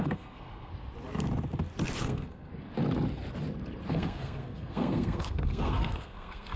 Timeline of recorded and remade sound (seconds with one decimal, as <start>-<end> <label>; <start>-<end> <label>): 0.0-0.7 remade; 0.7-2.0 recorded; 2.0-2.5 remade; 2.5-3.9 recorded; 3.9-6.6 remade